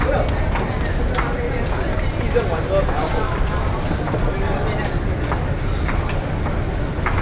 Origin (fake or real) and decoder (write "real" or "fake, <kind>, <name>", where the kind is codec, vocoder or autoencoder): real